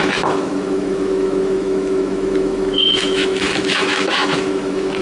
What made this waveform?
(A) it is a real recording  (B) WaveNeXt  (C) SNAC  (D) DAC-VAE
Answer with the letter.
D